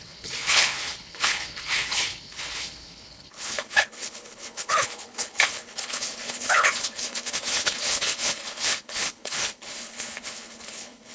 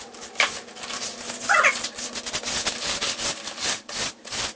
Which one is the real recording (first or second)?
second